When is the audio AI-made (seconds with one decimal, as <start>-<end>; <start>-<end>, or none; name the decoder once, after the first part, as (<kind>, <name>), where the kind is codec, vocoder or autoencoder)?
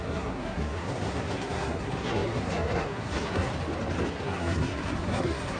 0.0-3.5 (codec, SNAC); 4.1-5.6